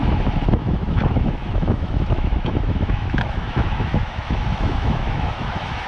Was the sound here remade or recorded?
remade